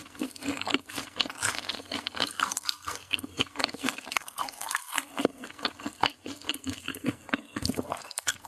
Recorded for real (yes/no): no